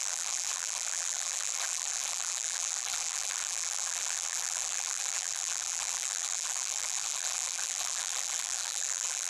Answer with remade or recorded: remade